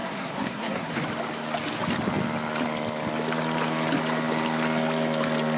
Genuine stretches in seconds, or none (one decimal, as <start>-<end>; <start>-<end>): 0.9-5.6